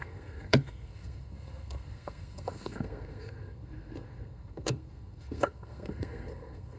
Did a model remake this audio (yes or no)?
yes